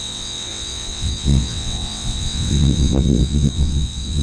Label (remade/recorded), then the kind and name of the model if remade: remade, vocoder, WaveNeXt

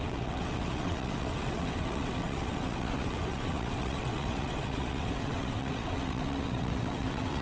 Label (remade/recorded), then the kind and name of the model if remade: remade, vocoder, WaveNeXt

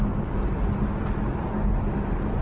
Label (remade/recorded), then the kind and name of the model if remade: recorded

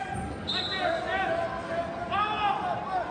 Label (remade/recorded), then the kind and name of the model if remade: recorded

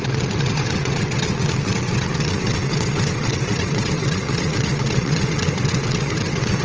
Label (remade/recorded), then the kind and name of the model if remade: remade, vocoder, WaveNeXt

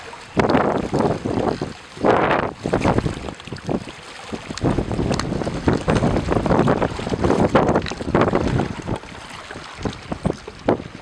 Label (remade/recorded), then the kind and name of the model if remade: recorded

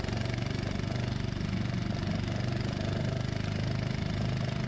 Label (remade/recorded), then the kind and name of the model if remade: recorded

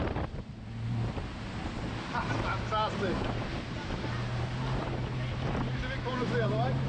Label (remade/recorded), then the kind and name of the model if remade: recorded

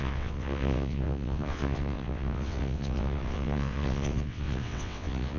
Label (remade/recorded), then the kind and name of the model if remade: remade, vocoder, WaveNeXt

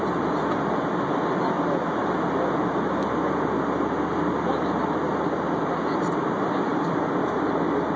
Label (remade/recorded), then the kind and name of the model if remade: recorded